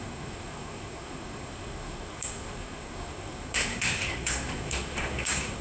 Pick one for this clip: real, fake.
fake